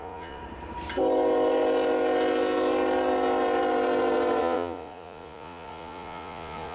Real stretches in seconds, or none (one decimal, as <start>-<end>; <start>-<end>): 0.4-4.4